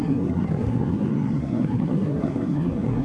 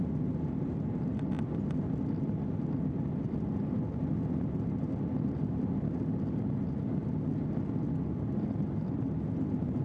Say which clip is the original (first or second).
second